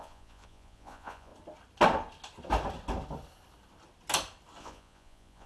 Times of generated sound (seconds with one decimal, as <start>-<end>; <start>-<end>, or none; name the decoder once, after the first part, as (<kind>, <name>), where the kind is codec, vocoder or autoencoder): 0.0-1.3 (vocoder, Vocos); 4.6-5.5